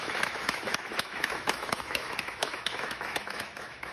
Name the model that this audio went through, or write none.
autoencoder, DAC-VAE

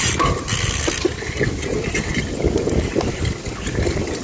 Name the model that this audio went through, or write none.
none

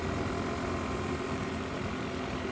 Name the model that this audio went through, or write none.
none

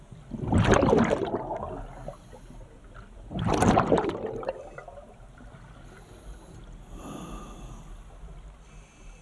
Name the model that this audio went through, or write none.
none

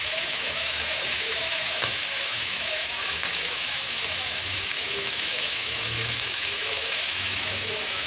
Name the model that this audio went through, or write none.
autoencoder, DAC-VAE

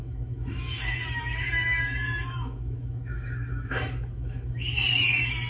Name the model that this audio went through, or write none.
autoencoder, DAC-VAE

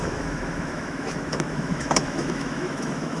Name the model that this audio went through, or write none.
autoencoder, DAC-VAE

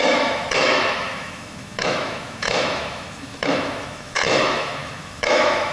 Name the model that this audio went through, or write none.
autoencoder, DAC-VAE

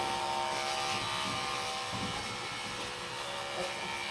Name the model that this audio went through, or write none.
none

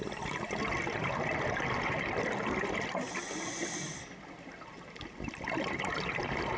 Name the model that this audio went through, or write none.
none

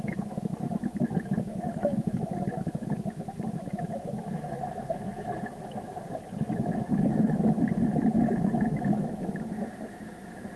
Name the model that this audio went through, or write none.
autoencoder, DAC-VAE